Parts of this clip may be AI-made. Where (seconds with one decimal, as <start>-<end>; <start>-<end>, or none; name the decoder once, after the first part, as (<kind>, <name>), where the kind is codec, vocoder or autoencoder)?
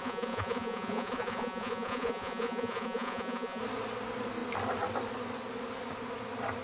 0.0-3.6 (vocoder, Vocos)